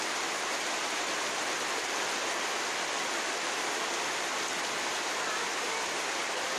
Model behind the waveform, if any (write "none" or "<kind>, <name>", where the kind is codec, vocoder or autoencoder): vocoder, BigVGAN v2